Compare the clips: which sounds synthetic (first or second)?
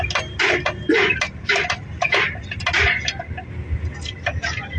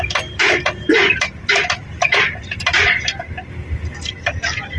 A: second